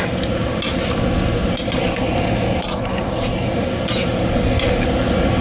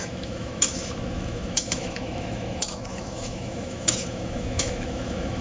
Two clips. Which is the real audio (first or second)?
first